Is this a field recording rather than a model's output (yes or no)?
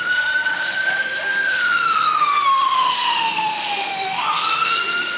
no